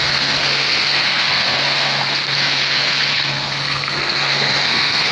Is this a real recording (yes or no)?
no